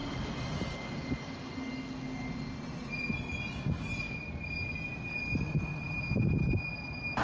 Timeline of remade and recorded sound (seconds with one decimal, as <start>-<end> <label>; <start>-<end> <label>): 0.0-7.2 recorded